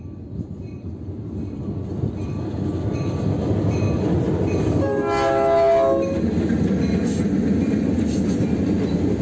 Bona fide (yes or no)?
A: yes